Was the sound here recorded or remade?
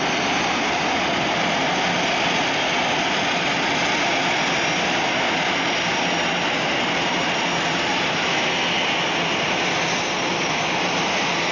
recorded